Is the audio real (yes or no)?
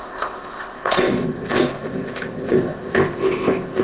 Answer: no